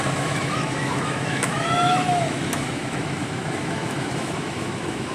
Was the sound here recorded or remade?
remade